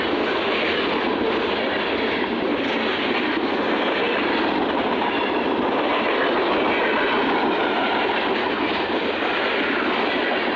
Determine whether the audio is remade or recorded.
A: recorded